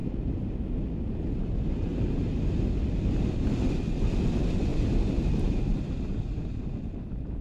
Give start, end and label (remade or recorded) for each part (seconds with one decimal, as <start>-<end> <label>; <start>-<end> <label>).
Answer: 0.0-0.6 remade; 0.6-1.9 recorded; 1.9-2.6 remade; 2.6-4.7 recorded; 4.7-5.6 remade; 5.6-6.1 recorded; 6.1-6.7 remade; 6.7-7.4 recorded